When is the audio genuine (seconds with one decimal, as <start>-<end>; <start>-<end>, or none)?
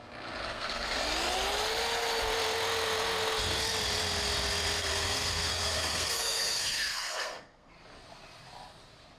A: 0.0-0.4; 1.0-4.8; 7.7-9.2